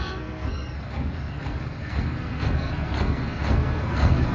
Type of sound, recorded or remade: remade